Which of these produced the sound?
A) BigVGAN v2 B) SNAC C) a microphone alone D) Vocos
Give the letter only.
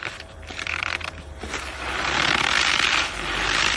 A